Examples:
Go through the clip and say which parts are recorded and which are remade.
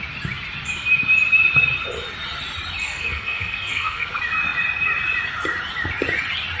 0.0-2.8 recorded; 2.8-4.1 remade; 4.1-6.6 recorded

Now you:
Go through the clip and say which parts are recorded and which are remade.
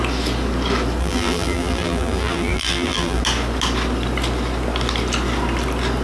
0.0-1.0 recorded; 1.0-3.2 remade; 3.2-6.0 recorded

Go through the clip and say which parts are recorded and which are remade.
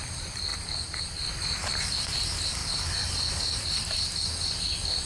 0.0-5.1 recorded